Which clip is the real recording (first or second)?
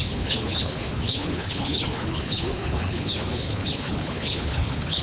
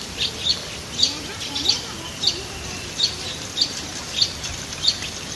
second